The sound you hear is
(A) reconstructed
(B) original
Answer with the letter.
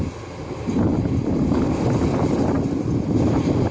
B